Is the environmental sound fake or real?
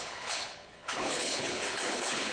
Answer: fake